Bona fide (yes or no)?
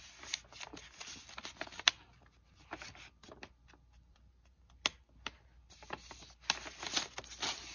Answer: yes